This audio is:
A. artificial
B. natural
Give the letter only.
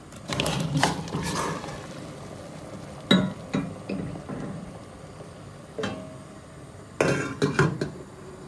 B